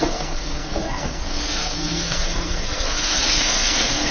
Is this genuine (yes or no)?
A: no